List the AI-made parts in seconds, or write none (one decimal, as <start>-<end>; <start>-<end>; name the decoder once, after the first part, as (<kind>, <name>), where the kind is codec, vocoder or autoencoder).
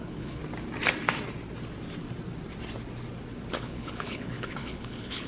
0.0-0.4 (codec, HILCodec); 3.6-5.3